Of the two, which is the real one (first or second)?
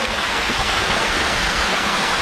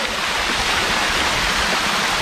second